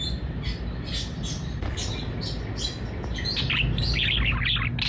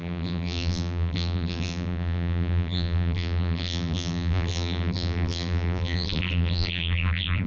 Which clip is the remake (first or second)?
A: second